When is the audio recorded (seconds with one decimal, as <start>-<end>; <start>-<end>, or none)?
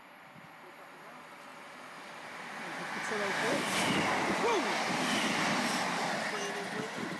0.0-7.2